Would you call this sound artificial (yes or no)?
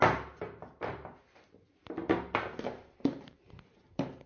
no